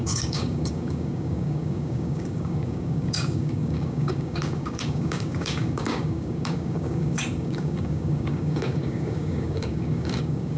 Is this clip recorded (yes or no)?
no